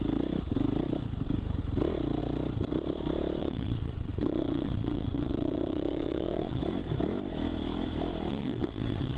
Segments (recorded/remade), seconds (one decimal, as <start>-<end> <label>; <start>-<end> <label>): 0.0-3.4 recorded; 3.4-6.6 remade; 6.6-8.3 recorded; 8.3-9.2 remade